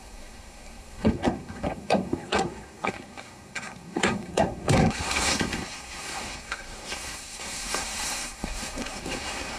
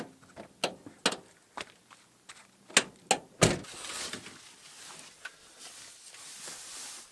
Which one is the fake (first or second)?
first